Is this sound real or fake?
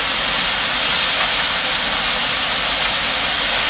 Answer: real